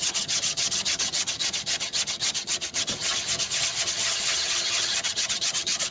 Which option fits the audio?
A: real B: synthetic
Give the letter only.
B